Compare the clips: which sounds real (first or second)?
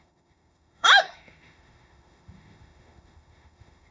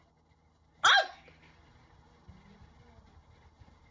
second